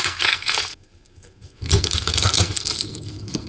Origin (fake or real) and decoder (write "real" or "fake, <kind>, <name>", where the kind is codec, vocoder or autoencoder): fake, codec, SNAC